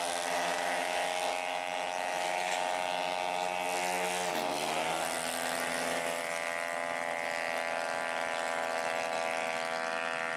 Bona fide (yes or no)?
yes